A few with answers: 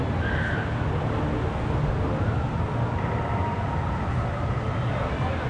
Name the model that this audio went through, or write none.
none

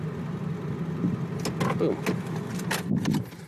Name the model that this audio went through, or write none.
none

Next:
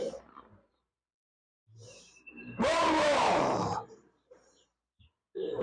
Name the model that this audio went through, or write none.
vocoder, BigVGAN v2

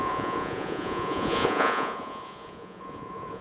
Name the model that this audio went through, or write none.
vocoder, Vocos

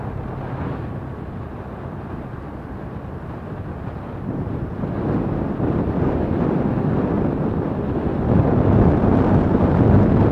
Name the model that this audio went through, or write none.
none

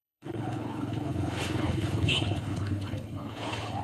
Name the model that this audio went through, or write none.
codec, HILCodec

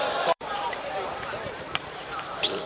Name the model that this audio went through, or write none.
vocoder, BigVGAN v2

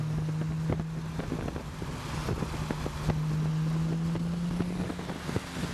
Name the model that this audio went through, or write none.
none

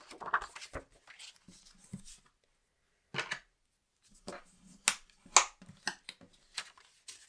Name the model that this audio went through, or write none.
none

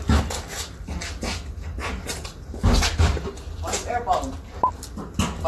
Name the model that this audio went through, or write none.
none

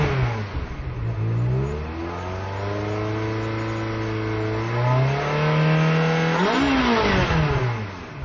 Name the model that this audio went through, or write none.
none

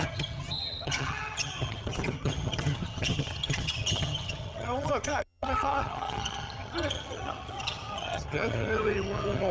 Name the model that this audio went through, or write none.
vocoder, HiFi-GAN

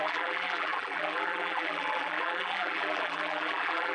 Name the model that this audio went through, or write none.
vocoder, BigVGAN v2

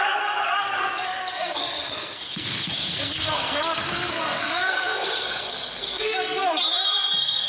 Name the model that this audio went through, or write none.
codec, SNAC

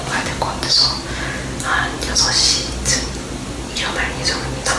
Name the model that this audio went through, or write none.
none